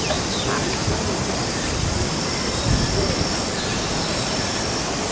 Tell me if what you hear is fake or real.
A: fake